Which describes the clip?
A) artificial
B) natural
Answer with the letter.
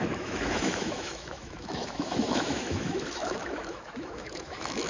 A